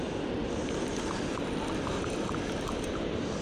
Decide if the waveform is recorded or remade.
recorded